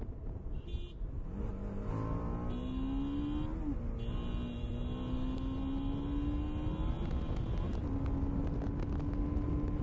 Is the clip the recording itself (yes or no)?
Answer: yes